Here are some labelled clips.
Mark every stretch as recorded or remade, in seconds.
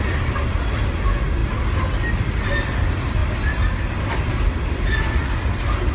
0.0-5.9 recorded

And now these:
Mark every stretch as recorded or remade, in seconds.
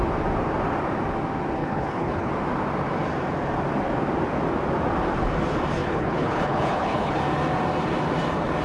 0.0-1.6 recorded; 1.6-2.3 remade; 2.3-5.8 recorded; 5.8-7.2 remade; 7.2-8.6 recorded